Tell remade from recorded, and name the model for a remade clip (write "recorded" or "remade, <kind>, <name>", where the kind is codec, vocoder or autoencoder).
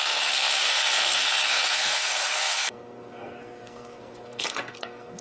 remade, codec, SNAC